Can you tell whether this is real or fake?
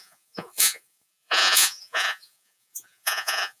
fake